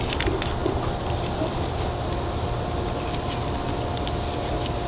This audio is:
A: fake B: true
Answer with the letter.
B